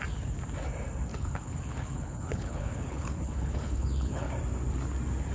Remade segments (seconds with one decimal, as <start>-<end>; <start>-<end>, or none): 1.1-4.3